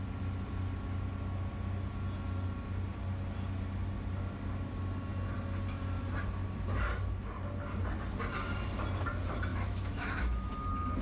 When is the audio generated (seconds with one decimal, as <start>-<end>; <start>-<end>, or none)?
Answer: 9.5-10.5